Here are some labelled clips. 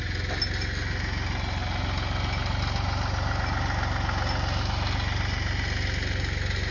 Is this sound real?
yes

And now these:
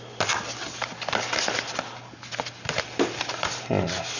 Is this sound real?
yes